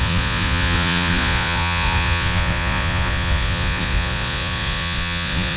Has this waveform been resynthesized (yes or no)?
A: yes